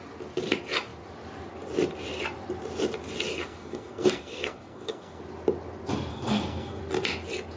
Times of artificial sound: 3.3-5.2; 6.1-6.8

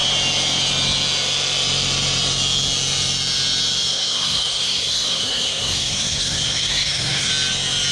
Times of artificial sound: 3.9-7.3

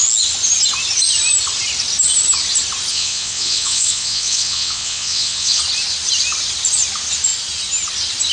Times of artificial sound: 2.9-5.6

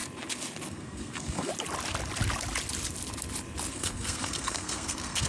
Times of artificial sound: 0.7-1.5; 3.7-5.3